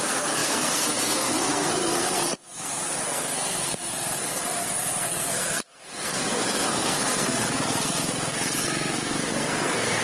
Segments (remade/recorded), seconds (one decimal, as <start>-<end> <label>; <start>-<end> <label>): 0.0-10.0 remade